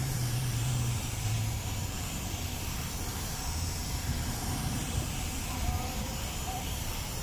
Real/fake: fake